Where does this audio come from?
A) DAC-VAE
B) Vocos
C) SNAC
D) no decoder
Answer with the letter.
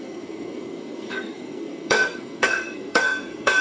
C